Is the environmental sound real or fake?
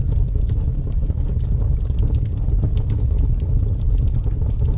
real